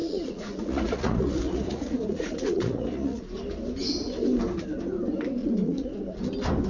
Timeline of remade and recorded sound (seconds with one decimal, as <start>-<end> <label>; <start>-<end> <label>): 0.0-3.2 remade; 3.2-5.4 recorded; 5.4-5.9 remade; 5.9-6.7 recorded